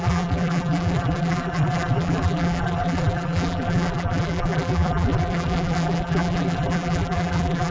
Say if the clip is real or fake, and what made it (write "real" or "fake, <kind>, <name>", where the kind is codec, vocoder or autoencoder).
fake, vocoder, BigVGAN v2